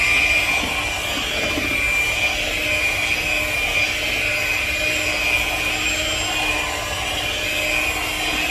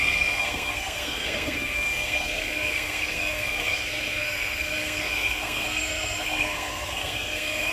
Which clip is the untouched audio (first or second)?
first